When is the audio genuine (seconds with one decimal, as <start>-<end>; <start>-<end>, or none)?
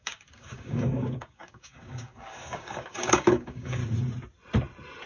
3.8-5.1